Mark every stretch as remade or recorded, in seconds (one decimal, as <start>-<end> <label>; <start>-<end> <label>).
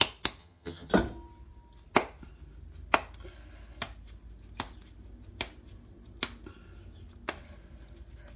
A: 0.0-0.4 recorded; 0.4-0.9 remade; 0.9-8.4 recorded